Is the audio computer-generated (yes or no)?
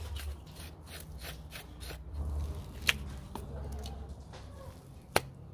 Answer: no